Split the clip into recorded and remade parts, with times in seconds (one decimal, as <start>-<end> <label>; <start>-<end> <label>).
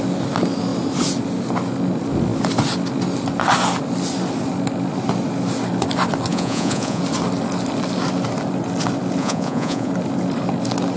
0.0-6.3 recorded; 6.3-7.0 remade; 7.0-9.2 recorded; 9.2-9.9 remade; 9.9-11.0 recorded